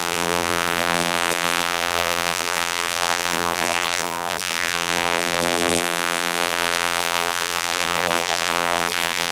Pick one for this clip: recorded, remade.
remade